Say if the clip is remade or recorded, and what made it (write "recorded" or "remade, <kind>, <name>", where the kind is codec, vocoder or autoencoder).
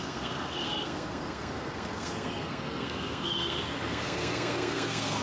remade, codec, SNAC